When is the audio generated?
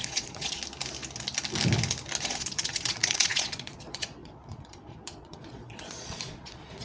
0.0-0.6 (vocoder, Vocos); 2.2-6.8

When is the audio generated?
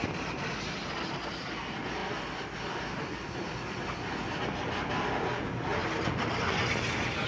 none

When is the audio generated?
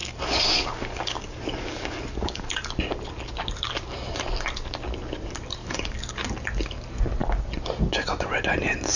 0.0-2.5 (codec, DAC); 5.6-6.1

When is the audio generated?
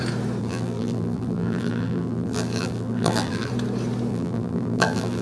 0.4-3.5 (vocoder, BigVGAN v2); 4.1-5.2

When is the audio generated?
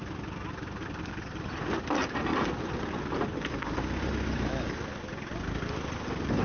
none